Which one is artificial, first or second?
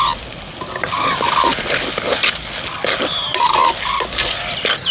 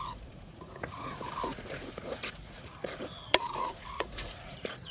second